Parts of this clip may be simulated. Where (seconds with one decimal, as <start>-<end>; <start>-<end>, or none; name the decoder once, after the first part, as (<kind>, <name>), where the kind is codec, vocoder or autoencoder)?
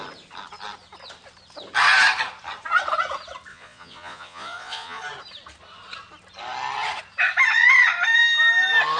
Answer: 3.5-5.0 (vocoder, Vocos)